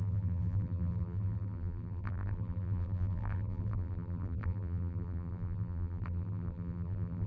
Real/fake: fake